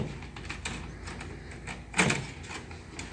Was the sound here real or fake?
real